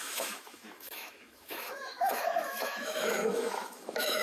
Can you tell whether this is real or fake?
fake